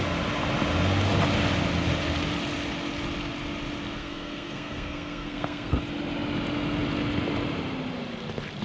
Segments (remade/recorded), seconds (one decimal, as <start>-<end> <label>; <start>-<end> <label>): 0.0-4.0 recorded; 4.0-5.8 remade; 5.8-8.6 recorded